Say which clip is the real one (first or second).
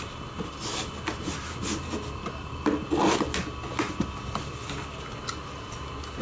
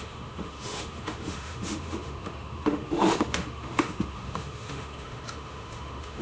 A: first